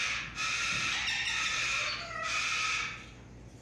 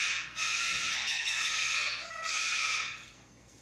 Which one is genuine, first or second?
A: first